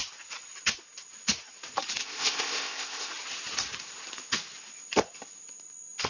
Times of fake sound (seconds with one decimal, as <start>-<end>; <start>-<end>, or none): 2.0-3.1